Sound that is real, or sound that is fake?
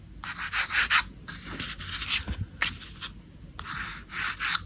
real